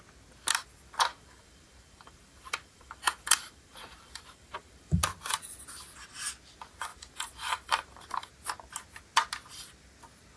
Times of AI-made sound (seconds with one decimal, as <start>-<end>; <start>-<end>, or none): 1.1-5.0; 6.9-8.3